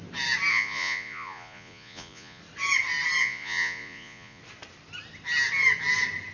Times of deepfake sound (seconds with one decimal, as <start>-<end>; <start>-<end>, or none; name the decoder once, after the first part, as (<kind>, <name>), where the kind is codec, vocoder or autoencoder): 0.5-2.4 (vocoder, Vocos); 3.2-4.4